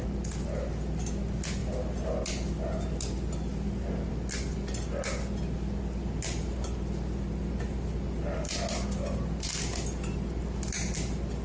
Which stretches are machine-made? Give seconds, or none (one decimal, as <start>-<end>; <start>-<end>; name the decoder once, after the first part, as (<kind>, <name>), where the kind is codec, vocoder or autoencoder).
none